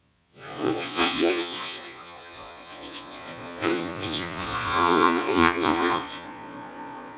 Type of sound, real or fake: fake